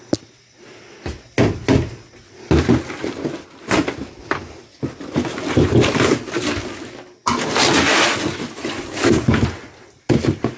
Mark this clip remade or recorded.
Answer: recorded